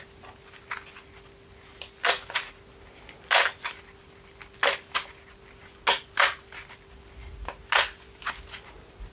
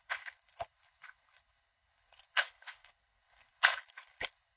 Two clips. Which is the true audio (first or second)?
first